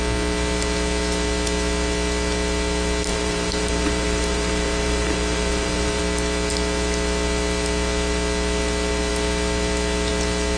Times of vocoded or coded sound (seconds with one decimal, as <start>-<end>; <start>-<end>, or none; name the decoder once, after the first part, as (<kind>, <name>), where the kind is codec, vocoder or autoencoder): 3.1-6.0 (vocoder, BigVGAN v2)